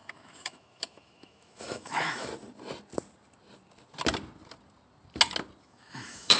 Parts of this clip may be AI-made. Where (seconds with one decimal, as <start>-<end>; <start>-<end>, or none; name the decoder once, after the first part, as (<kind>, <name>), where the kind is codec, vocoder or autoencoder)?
0.0-2.3 (autoencoder, DAC-VAE); 5.6-6.4